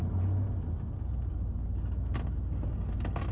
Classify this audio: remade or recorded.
recorded